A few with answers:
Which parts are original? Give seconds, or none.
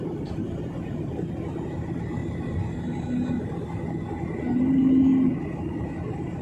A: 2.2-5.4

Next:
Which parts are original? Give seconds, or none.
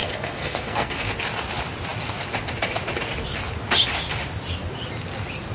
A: 1.1-5.5